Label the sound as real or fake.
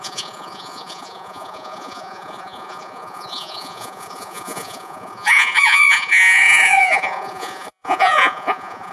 fake